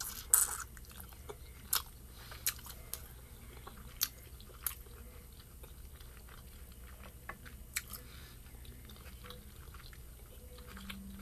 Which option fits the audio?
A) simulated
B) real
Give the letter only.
B